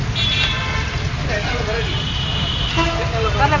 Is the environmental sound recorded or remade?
recorded